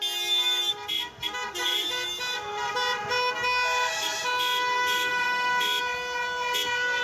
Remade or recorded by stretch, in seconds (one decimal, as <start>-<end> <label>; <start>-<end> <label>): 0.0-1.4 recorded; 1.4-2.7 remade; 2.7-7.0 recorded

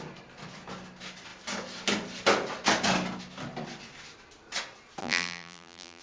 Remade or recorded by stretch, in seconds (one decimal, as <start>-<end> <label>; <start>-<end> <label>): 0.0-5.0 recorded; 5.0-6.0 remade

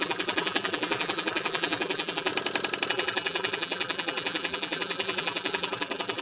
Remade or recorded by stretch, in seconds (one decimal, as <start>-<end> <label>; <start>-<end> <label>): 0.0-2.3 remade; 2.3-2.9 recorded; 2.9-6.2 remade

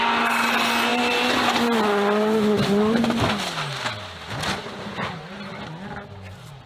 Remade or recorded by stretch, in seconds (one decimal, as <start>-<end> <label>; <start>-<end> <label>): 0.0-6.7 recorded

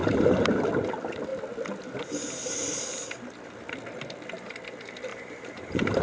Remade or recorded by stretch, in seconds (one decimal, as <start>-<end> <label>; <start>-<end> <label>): 0.0-0.7 remade; 0.7-5.1 recorded; 5.1-6.0 remade